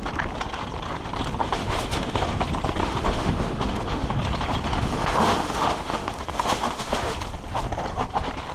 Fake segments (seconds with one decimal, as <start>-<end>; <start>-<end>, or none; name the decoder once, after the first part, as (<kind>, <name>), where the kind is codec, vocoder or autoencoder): 1.4-2.4 (autoencoder, DAC-VAE); 2.8-4.2; 4.7-7.2